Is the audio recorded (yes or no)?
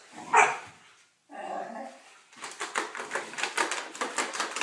yes